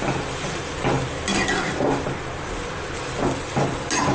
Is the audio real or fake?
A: real